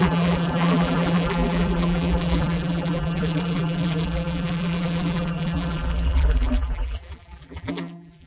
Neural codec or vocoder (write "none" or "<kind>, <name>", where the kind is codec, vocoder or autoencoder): vocoder, BigVGAN v2